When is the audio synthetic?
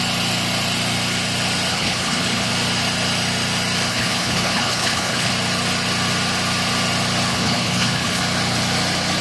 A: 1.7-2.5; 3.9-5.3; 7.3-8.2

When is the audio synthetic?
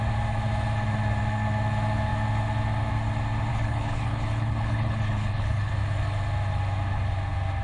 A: 3.5-5.7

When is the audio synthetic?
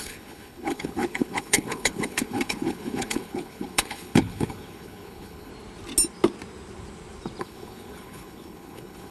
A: 0.0-5.5; 7.4-9.1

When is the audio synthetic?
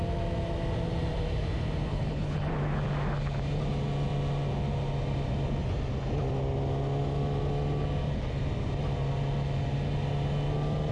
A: 1.9-2.5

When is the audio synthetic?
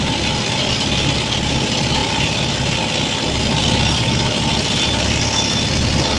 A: none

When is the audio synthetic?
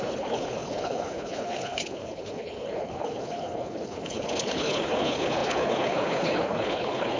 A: 0.0-7.2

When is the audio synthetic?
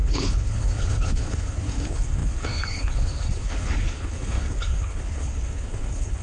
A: 0.0-6.2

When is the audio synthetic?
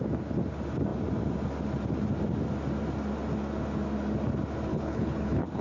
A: 4.7-5.6